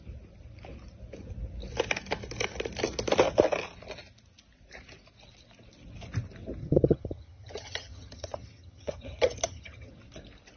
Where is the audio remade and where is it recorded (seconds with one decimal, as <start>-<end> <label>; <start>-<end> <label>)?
0.0-6.6 recorded; 6.6-9.9 remade; 9.9-10.6 recorded